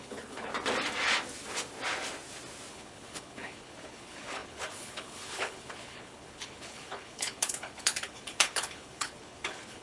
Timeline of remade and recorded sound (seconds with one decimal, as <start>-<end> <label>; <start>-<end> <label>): 0.0-0.5 remade; 0.5-2.7 recorded; 2.7-9.8 remade